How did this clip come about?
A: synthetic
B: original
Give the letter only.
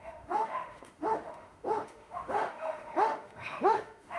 A